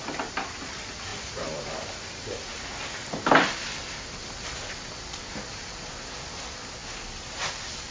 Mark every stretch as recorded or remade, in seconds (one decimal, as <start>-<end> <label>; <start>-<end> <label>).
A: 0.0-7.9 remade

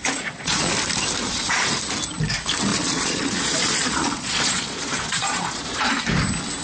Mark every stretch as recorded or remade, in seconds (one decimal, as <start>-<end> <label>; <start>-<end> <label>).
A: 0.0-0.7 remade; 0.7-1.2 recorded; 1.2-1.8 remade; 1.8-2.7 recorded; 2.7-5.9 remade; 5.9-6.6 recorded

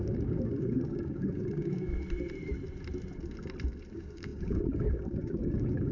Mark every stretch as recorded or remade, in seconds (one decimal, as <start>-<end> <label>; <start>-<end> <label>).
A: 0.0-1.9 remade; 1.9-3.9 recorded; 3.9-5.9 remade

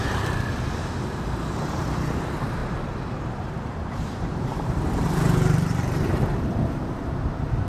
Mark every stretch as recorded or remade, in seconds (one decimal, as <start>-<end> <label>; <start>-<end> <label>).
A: 0.0-2.6 remade; 2.6-3.2 recorded; 3.2-7.7 remade